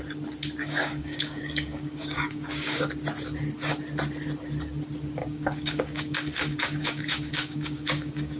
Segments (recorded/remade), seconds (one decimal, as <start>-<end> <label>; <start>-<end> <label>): 0.0-0.6 recorded; 0.6-2.9 remade; 2.9-5.2 recorded; 5.2-8.4 remade